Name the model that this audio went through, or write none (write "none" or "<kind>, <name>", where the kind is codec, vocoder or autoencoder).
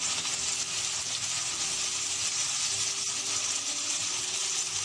none